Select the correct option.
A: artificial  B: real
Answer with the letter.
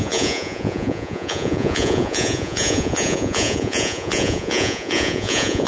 A